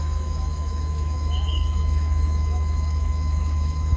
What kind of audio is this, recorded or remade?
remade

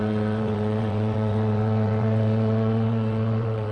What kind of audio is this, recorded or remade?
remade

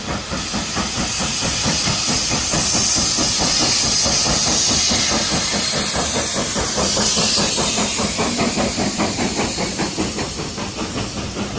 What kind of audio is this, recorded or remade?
recorded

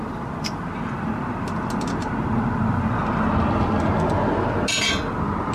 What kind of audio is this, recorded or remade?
recorded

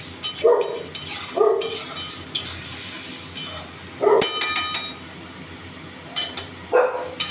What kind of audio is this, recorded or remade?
recorded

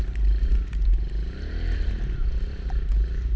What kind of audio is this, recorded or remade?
recorded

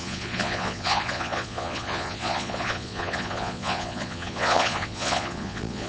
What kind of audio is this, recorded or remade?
remade